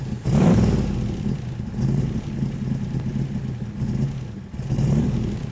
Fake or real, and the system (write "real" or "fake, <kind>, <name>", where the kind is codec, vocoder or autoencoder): real